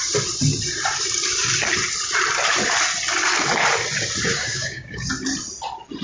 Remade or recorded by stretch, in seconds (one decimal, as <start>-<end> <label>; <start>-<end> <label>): 0.0-4.3 recorded; 4.3-5.1 remade; 5.1-6.0 recorded